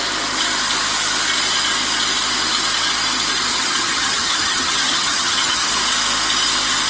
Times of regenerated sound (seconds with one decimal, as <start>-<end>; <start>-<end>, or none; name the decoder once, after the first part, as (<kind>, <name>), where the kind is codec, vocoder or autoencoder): 3.5-5.7 (vocoder, HiFi-GAN)